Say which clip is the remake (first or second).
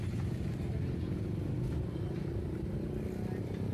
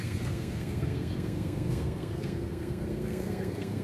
second